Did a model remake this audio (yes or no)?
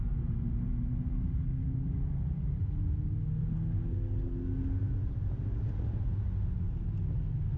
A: no